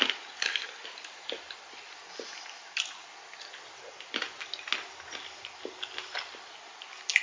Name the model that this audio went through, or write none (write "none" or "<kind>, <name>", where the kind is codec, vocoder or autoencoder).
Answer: none